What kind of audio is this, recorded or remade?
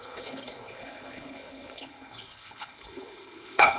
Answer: remade